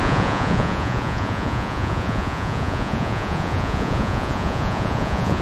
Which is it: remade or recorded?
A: remade